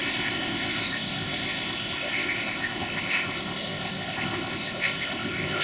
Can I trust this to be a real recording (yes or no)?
no